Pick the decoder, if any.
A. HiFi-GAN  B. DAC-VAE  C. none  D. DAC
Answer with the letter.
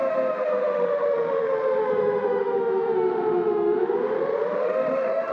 B